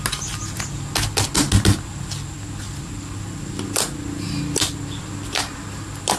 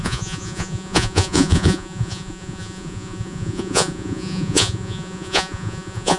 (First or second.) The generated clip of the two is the second